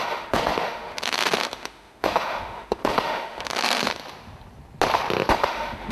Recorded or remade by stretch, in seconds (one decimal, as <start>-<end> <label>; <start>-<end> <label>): 0.0-4.0 remade; 4.0-5.3 recorded; 5.3-5.9 remade